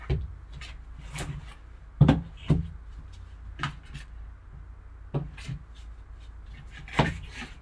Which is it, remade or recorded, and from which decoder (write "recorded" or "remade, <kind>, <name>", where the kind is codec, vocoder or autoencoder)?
recorded